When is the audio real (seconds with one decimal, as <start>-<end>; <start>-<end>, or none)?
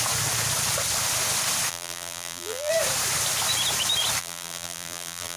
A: 0.0-1.7; 2.7-4.2